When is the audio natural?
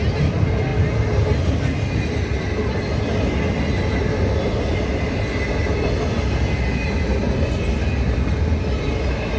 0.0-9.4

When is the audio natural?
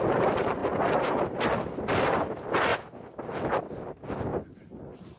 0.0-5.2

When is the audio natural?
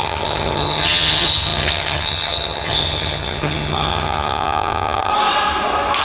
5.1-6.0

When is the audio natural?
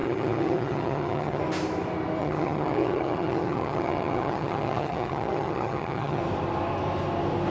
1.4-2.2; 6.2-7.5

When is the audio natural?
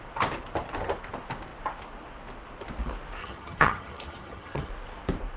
0.0-3.2; 4.7-5.4